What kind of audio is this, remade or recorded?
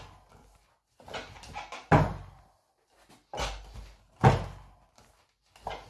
recorded